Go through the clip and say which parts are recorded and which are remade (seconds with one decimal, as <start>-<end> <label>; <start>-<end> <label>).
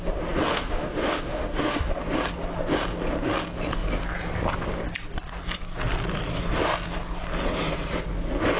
0.0-0.5 recorded; 0.5-1.9 remade; 1.9-8.6 recorded